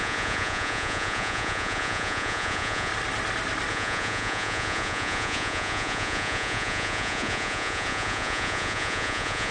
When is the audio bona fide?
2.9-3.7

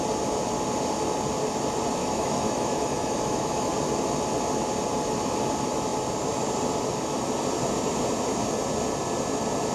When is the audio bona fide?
0.0-2.0; 3.7-9.7